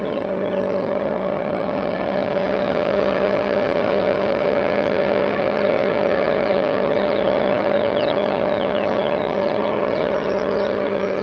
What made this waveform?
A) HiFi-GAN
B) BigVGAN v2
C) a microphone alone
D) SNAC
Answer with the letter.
A